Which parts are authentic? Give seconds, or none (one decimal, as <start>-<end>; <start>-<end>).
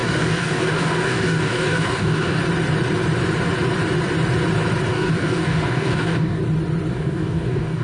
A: 2.4-4.9; 6.4-6.9